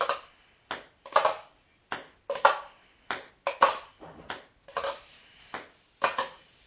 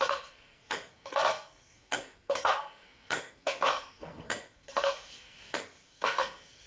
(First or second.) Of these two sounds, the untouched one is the first